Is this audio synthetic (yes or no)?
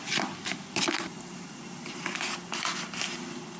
no